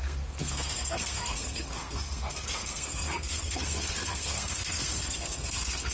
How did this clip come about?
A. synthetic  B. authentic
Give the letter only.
A